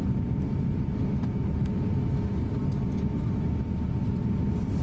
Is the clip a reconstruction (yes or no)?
no